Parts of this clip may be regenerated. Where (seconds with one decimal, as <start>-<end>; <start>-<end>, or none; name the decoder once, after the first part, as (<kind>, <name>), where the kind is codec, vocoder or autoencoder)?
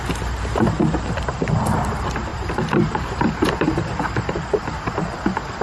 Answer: 2.3-4.9 (vocoder, BigVGAN v2)